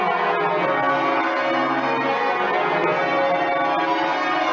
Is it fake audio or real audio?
real